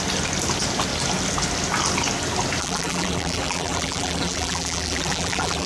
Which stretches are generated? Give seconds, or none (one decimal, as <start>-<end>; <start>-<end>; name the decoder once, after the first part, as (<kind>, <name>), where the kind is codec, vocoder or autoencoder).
2.6-5.7 (vocoder, BigVGAN v2)